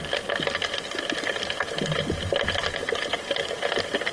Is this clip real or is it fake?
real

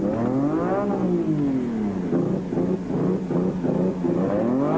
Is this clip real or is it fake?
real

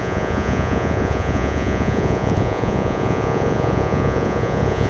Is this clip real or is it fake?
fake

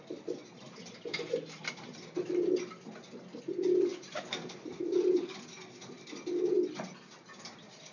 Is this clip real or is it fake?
real